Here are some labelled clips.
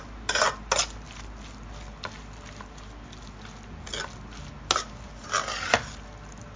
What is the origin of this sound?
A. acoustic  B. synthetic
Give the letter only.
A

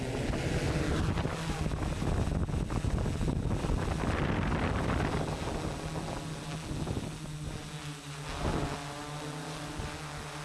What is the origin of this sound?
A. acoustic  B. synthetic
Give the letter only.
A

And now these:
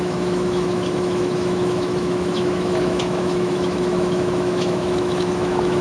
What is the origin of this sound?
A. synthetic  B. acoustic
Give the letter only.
A